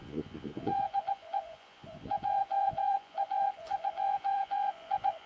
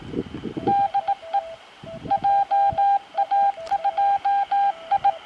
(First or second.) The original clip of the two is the second